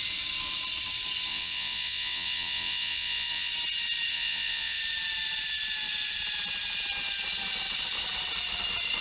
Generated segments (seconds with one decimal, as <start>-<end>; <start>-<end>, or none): 1.3-3.5; 4.1-4.8